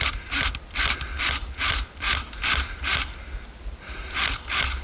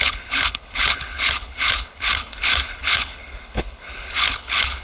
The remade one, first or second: second